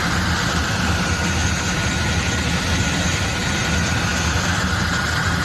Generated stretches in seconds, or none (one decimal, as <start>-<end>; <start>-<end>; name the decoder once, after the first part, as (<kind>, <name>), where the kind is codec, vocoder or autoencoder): none